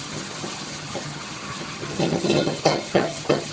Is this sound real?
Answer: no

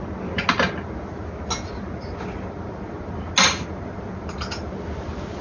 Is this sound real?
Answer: yes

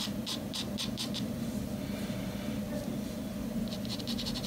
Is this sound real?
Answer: no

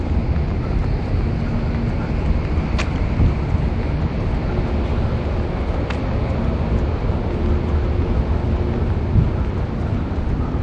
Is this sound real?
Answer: yes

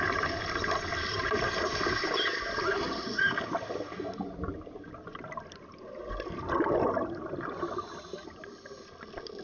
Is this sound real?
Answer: yes